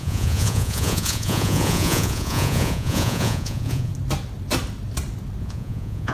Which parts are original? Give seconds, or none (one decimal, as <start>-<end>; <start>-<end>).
3.9-5.4